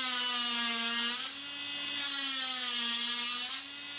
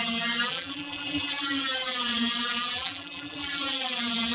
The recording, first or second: first